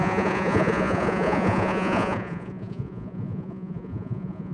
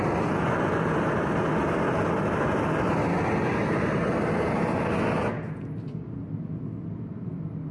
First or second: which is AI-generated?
first